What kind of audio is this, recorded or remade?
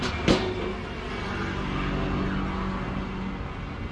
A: recorded